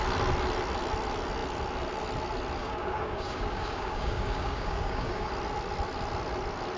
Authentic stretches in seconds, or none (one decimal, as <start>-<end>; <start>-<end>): 0.0-2.6; 5.3-6.8